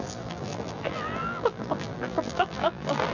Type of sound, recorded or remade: remade